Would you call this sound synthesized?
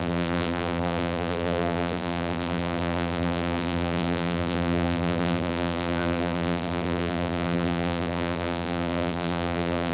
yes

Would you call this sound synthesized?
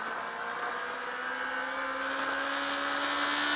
no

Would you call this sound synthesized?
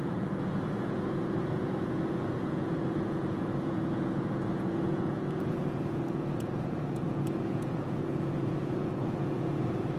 yes